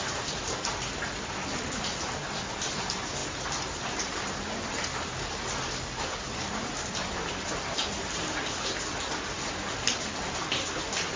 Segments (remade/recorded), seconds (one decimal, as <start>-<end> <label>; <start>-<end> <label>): 0.0-11.2 recorded